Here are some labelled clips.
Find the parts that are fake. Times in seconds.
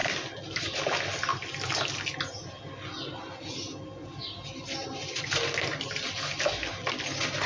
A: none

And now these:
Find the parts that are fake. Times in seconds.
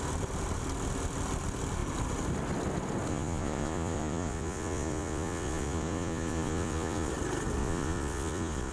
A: 3.1-7.1 (vocoder, Vocos); 7.6-8.7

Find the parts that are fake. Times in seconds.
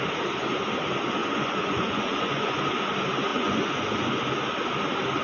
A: 1.2-2.6 (vocoder, Vocos); 3.3-4.2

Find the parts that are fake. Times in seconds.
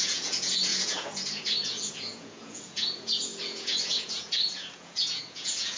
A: 0.0-5.8 (vocoder, Vocos)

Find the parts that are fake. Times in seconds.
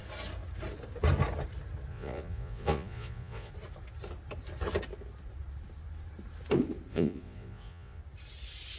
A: 1.9-3.5 (vocoder, Vocos); 6.9-8.0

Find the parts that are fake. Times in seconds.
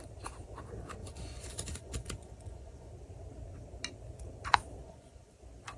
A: 1.0-2.9 (vocoder, Vocos); 4.8-5.3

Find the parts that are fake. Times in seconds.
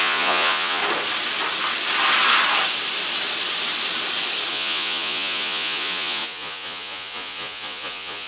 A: 0.0-0.8 (vocoder, Vocos); 4.5-8.3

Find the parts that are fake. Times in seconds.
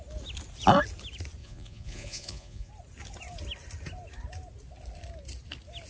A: 1.4-2.7 (vocoder, Vocos)